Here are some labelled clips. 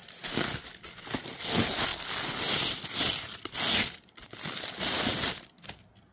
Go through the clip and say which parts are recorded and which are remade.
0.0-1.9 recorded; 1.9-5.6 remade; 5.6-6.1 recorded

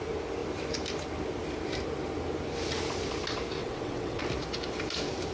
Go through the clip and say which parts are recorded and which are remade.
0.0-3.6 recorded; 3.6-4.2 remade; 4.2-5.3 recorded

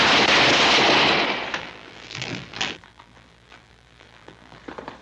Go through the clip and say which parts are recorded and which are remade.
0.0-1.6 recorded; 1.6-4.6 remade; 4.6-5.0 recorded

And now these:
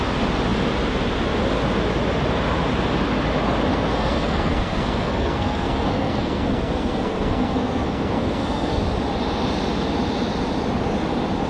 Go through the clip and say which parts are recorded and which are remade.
0.0-3.7 recorded; 3.7-8.8 remade; 8.8-11.5 recorded